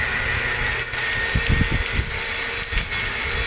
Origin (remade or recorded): recorded